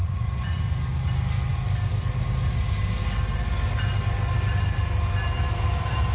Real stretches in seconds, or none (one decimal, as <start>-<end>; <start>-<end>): 0.6-6.1